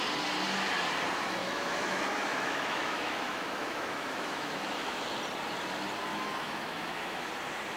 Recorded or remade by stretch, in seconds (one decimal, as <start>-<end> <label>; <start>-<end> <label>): 0.0-1.4 recorded; 1.4-5.0 remade; 5.0-6.1 recorded; 6.1-7.3 remade; 7.3-7.8 recorded